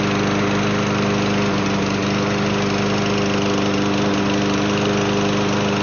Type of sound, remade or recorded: recorded